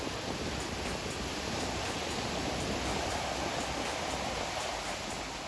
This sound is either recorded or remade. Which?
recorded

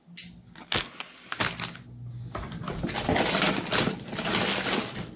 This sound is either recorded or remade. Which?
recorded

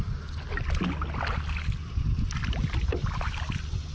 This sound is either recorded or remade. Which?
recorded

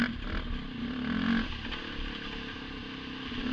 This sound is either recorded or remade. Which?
recorded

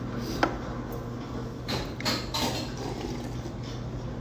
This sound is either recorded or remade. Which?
recorded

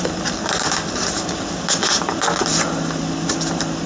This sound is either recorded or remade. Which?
recorded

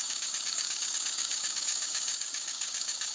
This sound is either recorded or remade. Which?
remade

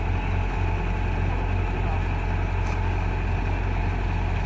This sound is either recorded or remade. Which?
recorded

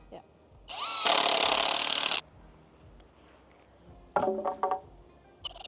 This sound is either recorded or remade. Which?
recorded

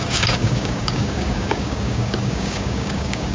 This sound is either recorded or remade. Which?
remade